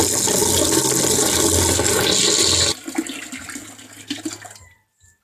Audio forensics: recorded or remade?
recorded